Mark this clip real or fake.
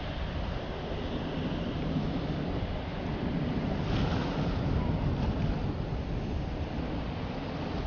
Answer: real